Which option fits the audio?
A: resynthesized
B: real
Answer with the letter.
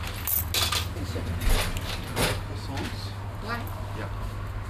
B